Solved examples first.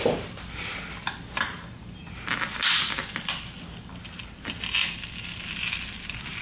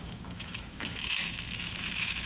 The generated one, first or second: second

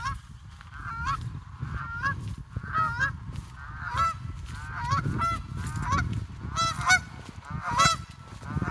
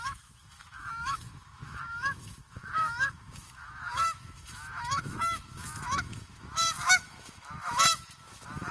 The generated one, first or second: second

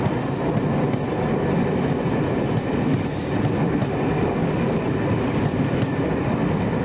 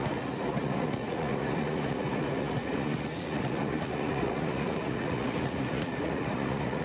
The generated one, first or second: second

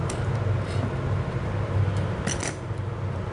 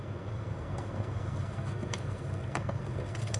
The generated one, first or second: second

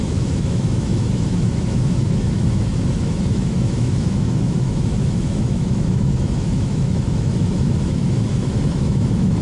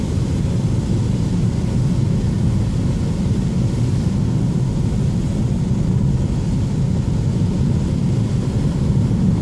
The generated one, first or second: first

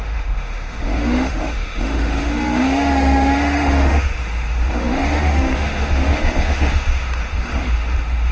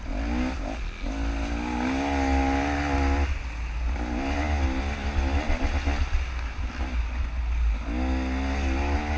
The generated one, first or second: first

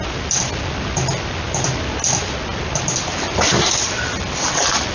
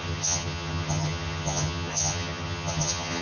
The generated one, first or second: second